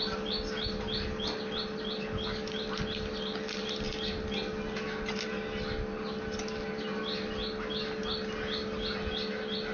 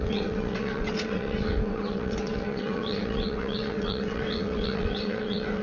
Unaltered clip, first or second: first